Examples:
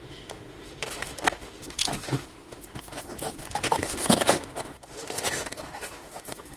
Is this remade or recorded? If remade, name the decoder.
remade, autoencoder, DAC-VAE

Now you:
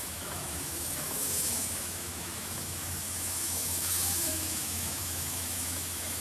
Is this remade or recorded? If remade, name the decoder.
remade, autoencoder, DAC-VAE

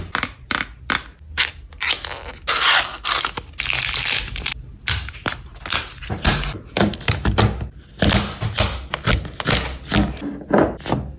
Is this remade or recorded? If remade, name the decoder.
recorded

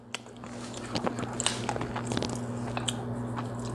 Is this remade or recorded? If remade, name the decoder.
recorded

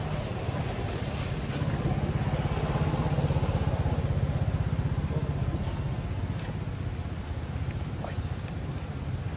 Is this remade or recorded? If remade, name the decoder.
recorded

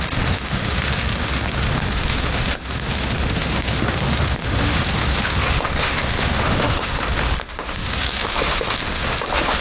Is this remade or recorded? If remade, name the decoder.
remade, autoencoder, DAC-VAE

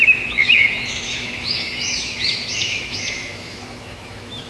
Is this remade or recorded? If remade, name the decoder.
remade, autoencoder, DAC-VAE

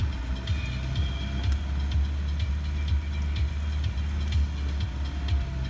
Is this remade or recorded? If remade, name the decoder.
recorded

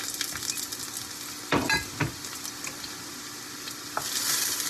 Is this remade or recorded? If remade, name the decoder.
recorded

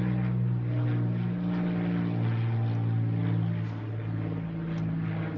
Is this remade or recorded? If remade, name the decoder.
recorded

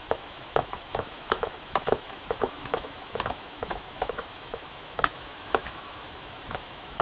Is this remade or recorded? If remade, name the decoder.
remade, autoencoder, DAC-VAE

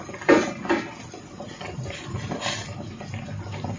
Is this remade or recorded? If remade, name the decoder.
recorded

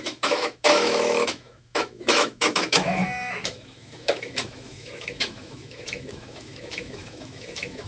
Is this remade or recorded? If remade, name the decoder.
remade, autoencoder, DAC-VAE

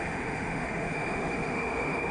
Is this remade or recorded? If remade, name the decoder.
remade, autoencoder, DAC-VAE